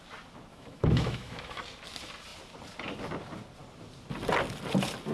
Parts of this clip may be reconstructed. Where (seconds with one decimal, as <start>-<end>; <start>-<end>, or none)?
0.5-1.6